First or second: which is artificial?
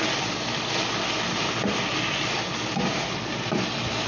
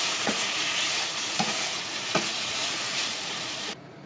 second